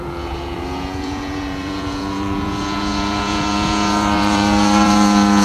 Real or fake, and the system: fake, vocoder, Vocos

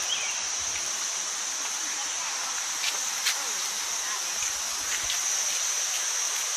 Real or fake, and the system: real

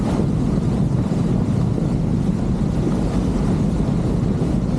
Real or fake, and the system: real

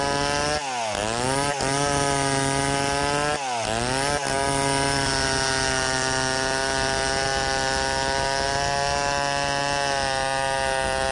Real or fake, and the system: real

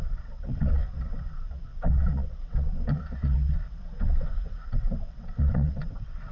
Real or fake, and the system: fake, vocoder, WaveNeXt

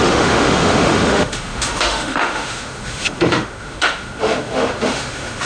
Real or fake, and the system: fake, autoencoder, DAC-VAE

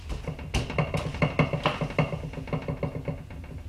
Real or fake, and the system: real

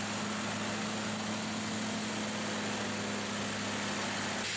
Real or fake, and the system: real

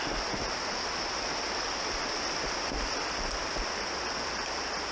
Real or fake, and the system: real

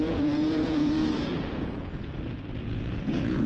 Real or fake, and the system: fake, vocoder, Vocos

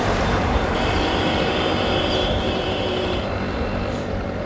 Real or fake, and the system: fake, vocoder, BigVGAN v2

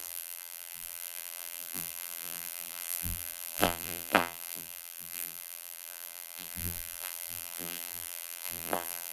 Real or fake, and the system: fake, vocoder, BigVGAN v2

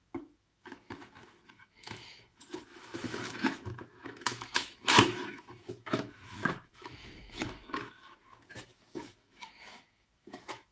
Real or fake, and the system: fake, autoencoder, DAC-VAE